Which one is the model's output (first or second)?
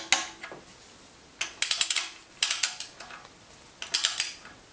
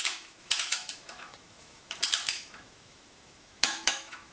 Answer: second